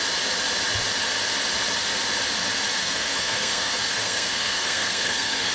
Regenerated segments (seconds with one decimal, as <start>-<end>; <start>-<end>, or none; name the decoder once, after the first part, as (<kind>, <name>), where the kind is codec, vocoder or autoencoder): 2.8-5.5 (codec, SNAC)